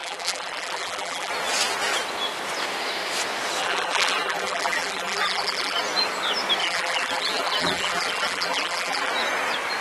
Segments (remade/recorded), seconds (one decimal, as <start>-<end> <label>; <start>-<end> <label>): 0.0-1.3 remade; 1.3-3.6 recorded; 3.6-5.8 remade; 5.8-6.6 recorded; 6.6-9.1 remade; 9.1-9.8 recorded